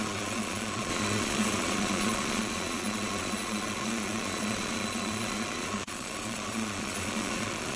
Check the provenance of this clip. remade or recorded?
remade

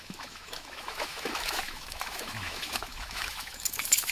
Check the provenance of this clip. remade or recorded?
remade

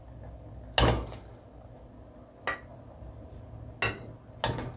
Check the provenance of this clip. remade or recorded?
recorded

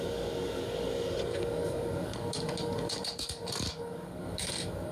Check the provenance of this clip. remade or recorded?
remade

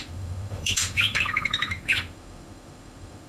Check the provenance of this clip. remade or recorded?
remade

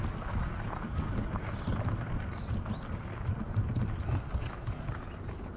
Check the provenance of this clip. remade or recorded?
recorded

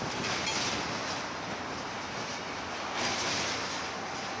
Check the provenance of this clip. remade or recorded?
recorded